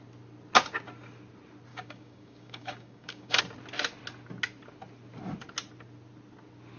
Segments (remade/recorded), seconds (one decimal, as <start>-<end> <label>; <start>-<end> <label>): 0.0-1.7 recorded; 1.7-3.4 remade; 3.4-6.8 recorded